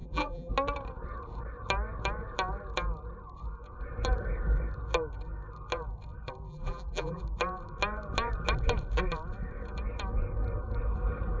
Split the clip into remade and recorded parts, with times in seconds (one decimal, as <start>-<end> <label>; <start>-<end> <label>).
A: 0.0-0.5 remade; 0.5-6.5 recorded; 6.5-7.2 remade; 7.2-11.4 recorded